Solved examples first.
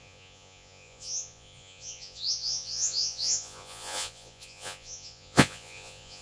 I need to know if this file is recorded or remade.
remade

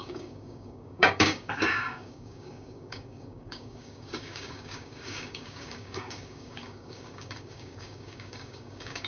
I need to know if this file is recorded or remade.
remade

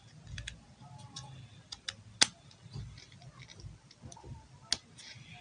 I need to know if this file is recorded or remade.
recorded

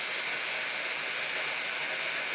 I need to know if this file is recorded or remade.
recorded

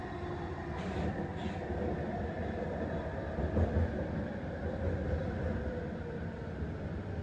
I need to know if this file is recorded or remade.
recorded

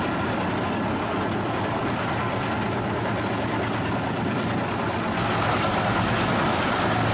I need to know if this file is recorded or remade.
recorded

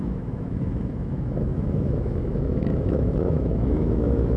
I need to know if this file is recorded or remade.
remade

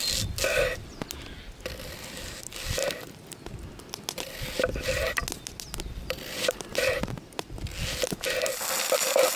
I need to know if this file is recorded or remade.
recorded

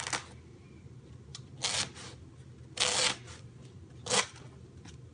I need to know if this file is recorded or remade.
recorded